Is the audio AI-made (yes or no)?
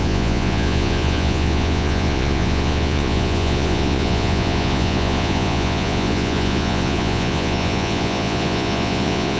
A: yes